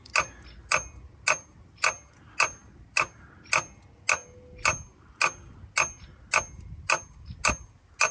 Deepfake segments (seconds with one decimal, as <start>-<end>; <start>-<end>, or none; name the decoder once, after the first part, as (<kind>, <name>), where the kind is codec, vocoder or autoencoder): none